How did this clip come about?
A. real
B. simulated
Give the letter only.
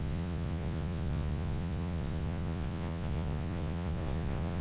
B